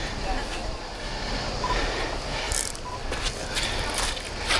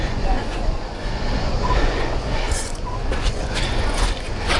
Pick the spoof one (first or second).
second